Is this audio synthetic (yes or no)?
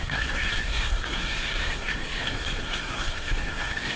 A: yes